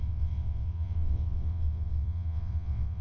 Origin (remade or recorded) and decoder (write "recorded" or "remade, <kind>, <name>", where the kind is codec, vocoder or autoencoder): remade, vocoder, WaveNeXt